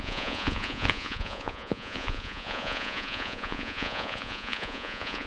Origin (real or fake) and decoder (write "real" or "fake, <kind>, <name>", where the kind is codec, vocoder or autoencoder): fake, vocoder, Vocos